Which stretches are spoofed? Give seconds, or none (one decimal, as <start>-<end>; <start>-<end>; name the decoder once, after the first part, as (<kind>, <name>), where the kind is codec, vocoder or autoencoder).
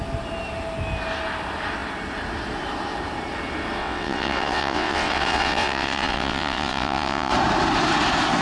3.8-7.3 (vocoder, WaveNeXt)